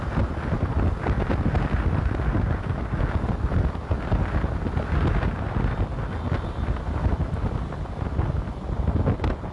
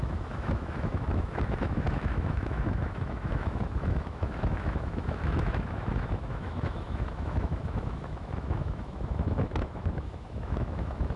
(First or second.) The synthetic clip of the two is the second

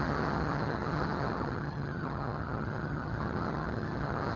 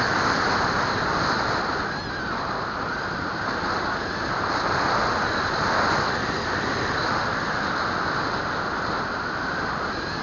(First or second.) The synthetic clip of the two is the first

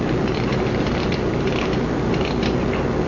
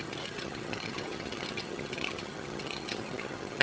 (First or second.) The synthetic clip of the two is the second